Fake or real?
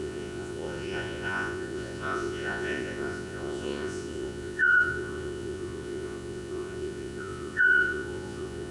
fake